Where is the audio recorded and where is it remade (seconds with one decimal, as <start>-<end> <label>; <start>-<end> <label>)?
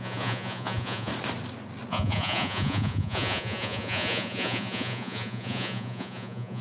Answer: 0.0-1.1 remade; 1.1-1.9 recorded; 1.9-6.6 remade